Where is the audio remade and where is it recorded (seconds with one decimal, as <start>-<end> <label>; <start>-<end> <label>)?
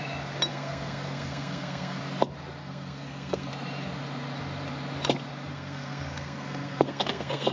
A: 0.0-0.5 recorded; 0.5-2.0 remade; 2.0-2.6 recorded; 2.6-3.5 remade; 3.5-5.5 recorded; 5.5-7.5 remade